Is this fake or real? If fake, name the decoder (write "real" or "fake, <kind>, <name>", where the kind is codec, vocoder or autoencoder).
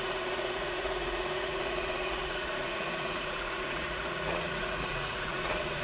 fake, vocoder, Vocos